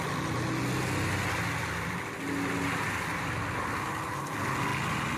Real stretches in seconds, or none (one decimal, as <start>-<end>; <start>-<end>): 0.0-5.2